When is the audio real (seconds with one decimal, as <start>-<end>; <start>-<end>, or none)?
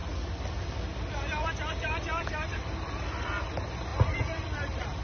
0.0-2.1; 2.9-3.9